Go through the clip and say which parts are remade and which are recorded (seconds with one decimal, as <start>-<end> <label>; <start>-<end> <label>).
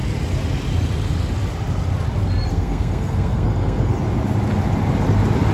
0.0-2.5 recorded; 2.5-3.9 remade; 3.9-5.5 recorded